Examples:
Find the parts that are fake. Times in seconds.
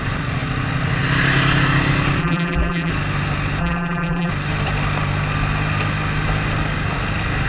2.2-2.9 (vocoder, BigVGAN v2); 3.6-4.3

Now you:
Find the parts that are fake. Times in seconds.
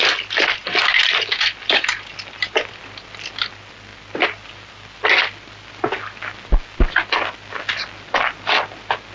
0.6-2.7 (vocoder, BigVGAN v2)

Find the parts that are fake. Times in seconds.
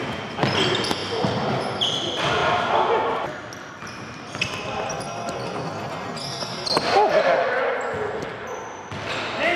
1.0-1.9 (vocoder, BigVGAN v2)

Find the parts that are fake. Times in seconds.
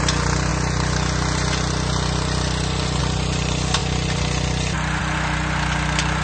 none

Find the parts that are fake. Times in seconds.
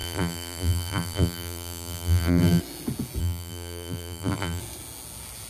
0.0-2.6 (vocoder, BigVGAN v2); 3.2-4.6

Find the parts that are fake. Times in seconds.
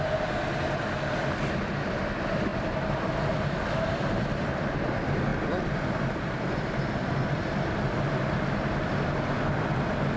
0.0-10.2 (vocoder, BigVGAN v2)